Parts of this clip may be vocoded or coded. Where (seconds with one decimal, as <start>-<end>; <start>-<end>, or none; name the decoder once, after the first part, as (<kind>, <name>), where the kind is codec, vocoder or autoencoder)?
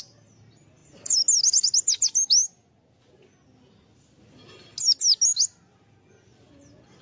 none